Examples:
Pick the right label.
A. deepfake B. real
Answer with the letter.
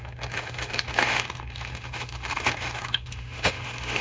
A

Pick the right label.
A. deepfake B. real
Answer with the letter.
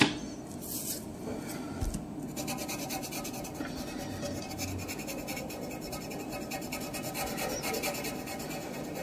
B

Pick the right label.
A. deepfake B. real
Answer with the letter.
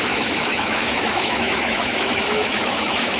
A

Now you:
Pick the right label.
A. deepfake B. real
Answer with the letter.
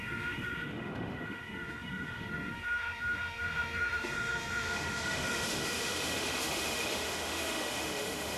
A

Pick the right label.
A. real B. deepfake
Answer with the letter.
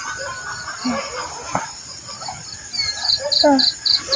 A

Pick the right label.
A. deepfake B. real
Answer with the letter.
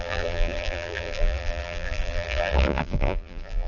A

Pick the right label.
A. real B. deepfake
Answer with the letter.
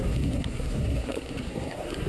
B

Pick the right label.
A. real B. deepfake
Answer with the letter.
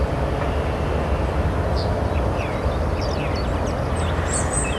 A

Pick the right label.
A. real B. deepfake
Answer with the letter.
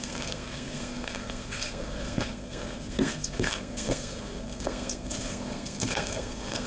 B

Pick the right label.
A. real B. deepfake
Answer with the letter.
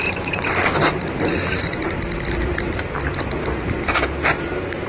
B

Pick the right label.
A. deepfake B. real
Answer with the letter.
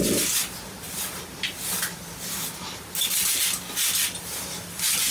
B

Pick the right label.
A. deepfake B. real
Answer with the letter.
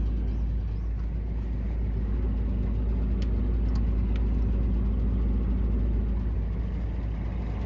B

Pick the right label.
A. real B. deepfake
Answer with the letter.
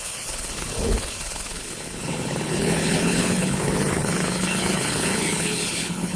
B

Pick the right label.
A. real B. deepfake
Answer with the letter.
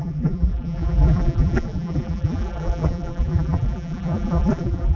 B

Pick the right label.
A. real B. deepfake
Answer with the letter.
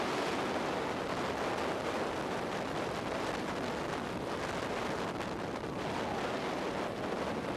A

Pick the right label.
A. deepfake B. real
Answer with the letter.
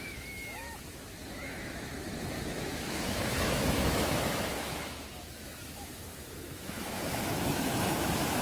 A